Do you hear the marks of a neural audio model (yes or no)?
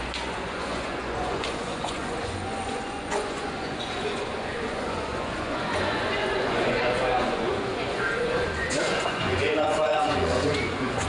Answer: yes